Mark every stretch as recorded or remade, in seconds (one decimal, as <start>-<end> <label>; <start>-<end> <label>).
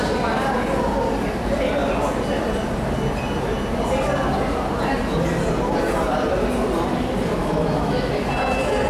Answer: 0.0-7.4 recorded; 7.4-8.1 remade; 8.1-8.9 recorded